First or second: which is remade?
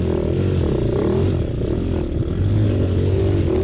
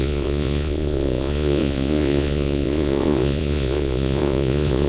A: second